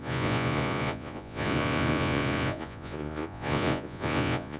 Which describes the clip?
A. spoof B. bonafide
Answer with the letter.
A